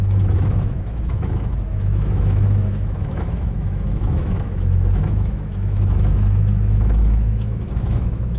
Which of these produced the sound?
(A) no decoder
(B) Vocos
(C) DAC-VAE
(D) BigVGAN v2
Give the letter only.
C